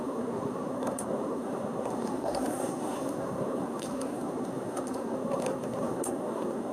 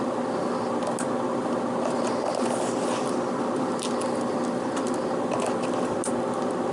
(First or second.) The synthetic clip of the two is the first